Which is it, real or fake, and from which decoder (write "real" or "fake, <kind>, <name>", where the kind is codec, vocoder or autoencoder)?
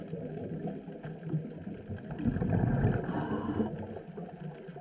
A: real